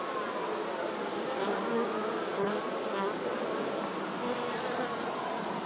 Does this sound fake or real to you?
real